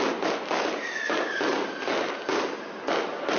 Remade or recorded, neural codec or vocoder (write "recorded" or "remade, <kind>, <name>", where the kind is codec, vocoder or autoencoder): recorded